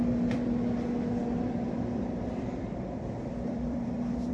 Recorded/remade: remade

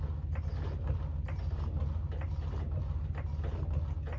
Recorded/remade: recorded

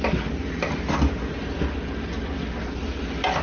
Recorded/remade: recorded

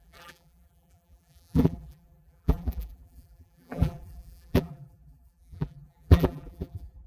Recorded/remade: remade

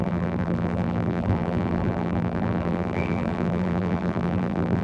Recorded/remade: remade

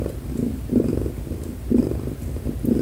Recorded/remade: recorded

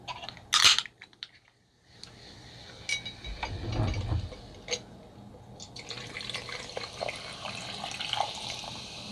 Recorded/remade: recorded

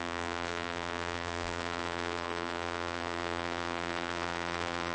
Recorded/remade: remade